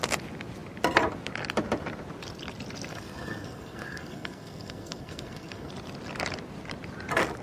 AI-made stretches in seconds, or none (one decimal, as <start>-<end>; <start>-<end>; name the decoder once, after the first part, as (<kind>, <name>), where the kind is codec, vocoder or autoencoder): 2.9-5.7 (codec, SNAC)